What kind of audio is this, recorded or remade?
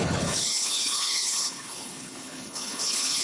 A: remade